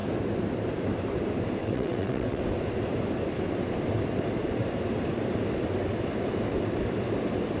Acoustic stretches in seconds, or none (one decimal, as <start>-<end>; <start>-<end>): 0.0-1.6; 2.4-7.6